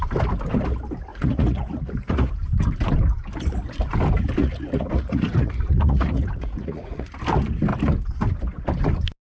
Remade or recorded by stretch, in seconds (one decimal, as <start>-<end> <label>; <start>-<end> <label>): 0.0-1.1 recorded; 1.1-2.3 remade; 2.3-4.4 recorded; 4.4-7.1 remade; 7.1-9.3 recorded